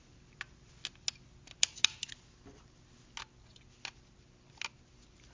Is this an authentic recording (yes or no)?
yes